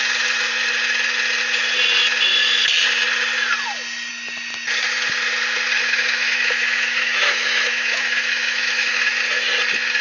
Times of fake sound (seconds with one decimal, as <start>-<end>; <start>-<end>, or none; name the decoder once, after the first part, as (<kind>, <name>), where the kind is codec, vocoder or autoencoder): 5.8-9.1 (autoencoder, DAC-VAE)